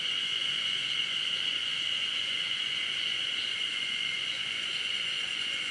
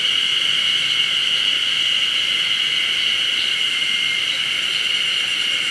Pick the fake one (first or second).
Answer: first